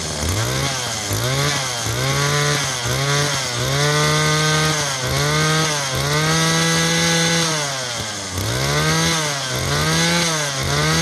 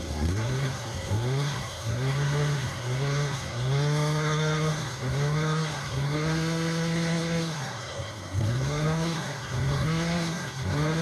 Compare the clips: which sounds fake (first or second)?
second